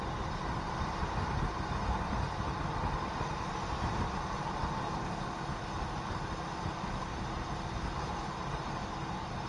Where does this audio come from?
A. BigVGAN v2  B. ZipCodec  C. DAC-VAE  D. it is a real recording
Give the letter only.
D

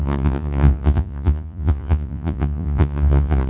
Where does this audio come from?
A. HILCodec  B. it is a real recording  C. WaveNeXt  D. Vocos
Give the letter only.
D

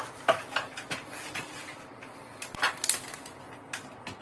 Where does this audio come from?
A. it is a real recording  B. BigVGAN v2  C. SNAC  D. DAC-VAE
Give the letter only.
A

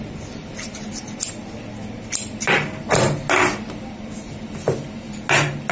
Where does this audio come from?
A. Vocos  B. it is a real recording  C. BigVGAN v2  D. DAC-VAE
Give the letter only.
B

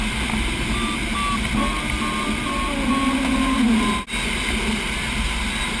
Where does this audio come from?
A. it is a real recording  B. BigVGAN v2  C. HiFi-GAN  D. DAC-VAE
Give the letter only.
A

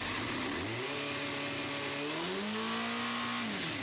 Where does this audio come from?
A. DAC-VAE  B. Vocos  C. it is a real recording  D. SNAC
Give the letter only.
C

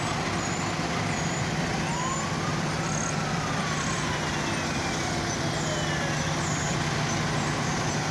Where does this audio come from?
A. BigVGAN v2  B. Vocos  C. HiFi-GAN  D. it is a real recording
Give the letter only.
D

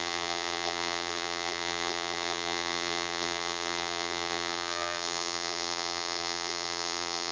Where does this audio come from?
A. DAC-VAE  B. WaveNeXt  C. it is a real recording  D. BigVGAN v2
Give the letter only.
D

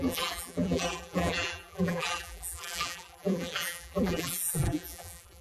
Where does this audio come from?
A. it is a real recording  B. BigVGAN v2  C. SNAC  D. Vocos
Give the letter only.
B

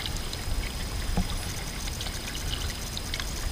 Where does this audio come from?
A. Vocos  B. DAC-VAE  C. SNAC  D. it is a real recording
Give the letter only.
D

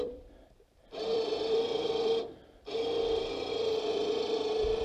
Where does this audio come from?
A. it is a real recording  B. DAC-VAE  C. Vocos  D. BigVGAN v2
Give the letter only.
D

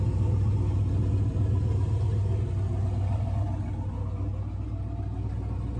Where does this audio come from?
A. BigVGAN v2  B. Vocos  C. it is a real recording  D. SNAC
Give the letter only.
C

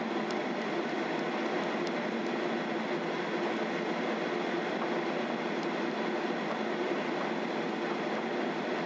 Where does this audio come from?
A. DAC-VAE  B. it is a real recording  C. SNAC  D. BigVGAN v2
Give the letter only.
B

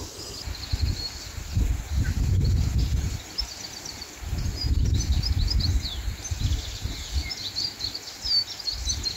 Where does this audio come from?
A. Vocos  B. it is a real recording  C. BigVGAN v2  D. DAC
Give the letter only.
B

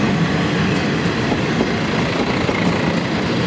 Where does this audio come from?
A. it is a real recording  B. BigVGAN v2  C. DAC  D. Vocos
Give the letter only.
B